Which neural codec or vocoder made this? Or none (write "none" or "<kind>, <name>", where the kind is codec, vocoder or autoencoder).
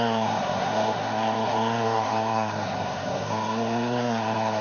codec, SNAC